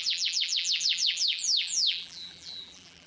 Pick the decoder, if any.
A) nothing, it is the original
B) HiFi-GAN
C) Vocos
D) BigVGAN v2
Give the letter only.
D